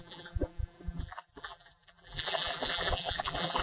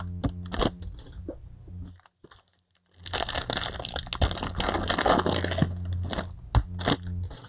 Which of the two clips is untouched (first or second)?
second